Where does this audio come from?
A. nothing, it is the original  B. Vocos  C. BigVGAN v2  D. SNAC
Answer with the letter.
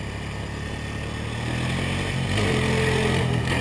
A